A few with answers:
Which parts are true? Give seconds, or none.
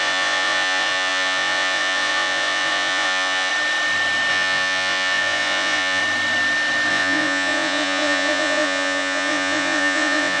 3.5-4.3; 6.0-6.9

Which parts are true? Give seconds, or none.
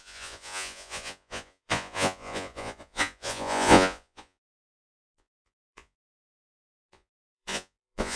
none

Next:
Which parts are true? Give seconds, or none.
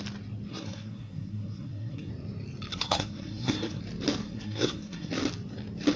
0.0-0.5; 2.1-2.7; 3.8-4.2; 5.1-6.0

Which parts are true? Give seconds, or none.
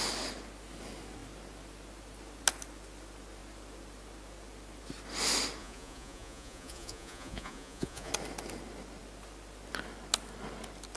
0.0-5.6; 8.1-11.0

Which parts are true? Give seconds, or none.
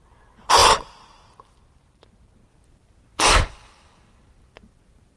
0.0-5.2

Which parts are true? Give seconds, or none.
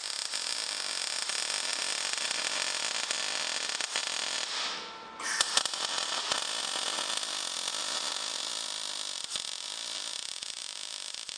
0.0-3.8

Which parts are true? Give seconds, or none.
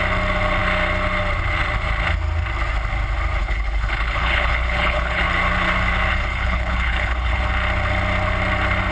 0.0-3.4; 5.2-6.1; 7.4-8.9